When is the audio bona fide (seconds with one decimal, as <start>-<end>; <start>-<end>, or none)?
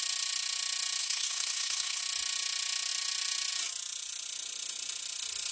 0.0-1.0; 2.0-5.5